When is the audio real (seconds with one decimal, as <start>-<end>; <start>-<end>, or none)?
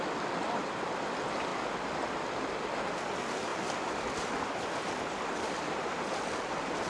0.0-6.9